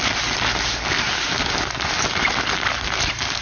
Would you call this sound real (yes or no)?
yes